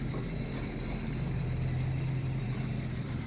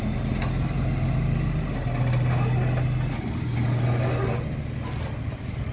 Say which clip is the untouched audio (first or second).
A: second